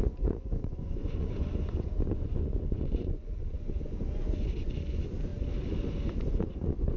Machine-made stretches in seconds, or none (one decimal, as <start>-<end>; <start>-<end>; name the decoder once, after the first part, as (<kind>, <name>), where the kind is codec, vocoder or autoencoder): 0.0-5.3 (vocoder, Vocos); 5.9-7.0